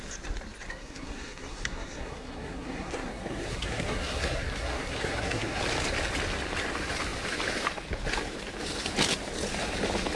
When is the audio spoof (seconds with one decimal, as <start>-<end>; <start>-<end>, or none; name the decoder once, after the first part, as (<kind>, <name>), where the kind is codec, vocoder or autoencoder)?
0.7-5.6 (codec, SNAC)